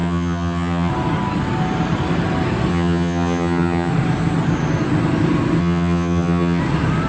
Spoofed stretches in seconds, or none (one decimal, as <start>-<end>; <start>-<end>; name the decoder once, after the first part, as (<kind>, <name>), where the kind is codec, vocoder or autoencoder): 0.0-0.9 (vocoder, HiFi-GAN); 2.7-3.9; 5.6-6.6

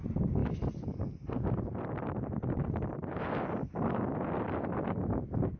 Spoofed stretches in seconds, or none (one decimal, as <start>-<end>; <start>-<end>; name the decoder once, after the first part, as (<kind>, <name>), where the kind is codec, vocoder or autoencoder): none

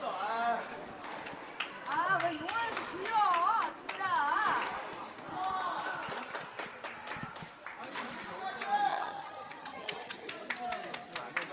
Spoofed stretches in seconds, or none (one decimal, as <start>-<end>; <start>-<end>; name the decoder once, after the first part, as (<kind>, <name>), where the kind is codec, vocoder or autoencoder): 8.9-10.3 (vocoder, HiFi-GAN)